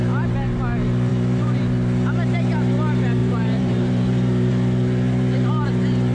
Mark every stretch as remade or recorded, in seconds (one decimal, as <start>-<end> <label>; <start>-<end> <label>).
0.0-1.1 recorded; 1.1-1.6 remade; 1.6-3.2 recorded; 3.2-4.5 remade; 4.5-6.1 recorded